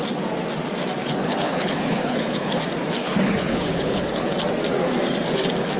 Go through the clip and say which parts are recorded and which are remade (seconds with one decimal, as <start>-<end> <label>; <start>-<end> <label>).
0.0-1.0 recorded; 1.0-2.6 remade; 2.6-3.0 recorded; 3.0-4.4 remade; 4.4-5.8 recorded